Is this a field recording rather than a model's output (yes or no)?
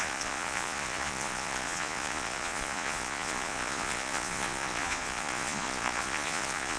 no